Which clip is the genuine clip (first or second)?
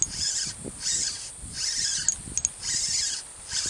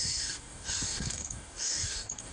first